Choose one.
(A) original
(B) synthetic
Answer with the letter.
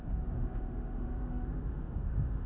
B